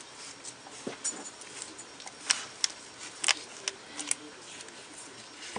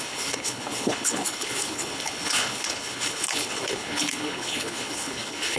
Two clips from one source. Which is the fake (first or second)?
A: second